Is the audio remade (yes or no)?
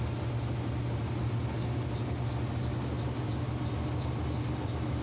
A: no